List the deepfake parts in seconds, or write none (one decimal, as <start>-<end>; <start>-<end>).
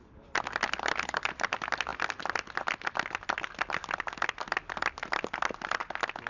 none